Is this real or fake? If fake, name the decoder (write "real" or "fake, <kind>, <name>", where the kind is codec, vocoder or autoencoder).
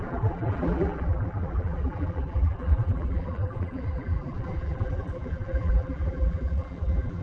fake, vocoder, BigVGAN v2